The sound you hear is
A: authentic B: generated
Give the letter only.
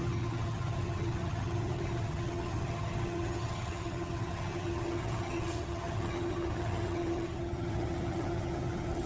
B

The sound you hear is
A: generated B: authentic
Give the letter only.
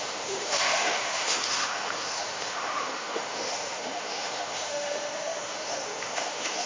A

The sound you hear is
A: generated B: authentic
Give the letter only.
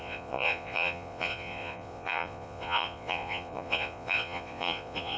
A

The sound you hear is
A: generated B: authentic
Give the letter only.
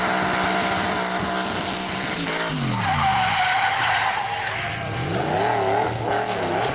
B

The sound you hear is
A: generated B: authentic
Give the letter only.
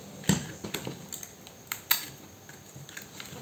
B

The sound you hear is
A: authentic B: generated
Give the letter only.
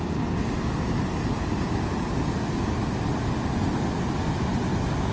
A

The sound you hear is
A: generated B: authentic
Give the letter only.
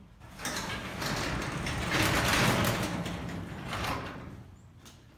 B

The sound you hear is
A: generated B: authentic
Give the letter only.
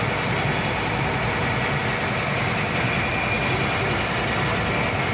B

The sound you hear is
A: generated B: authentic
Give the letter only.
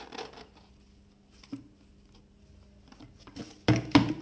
B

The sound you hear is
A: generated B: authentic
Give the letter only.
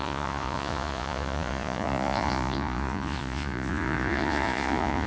A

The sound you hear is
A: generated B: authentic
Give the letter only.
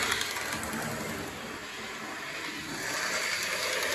B